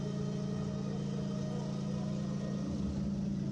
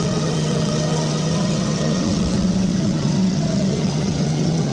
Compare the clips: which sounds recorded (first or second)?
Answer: first